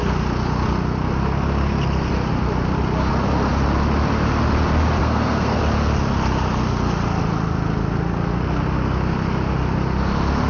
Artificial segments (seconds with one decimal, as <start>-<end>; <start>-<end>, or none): 5.0-5.6